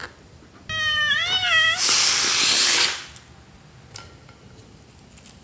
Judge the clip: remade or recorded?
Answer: recorded